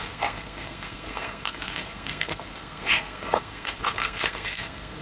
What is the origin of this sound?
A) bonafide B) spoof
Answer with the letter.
B